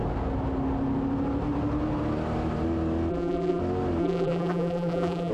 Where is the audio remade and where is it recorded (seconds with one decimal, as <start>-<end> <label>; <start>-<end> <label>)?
0.0-3.1 recorded; 3.1-3.6 remade; 3.6-4.0 recorded; 4.0-5.3 remade